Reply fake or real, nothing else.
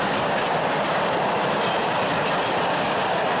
real